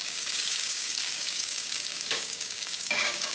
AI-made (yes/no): yes